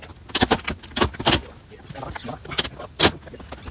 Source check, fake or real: real